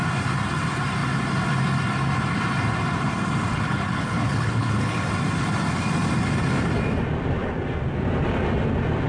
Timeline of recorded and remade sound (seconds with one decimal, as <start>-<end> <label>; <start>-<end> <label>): 0.0-3.5 recorded; 3.5-5.0 remade; 5.0-9.1 recorded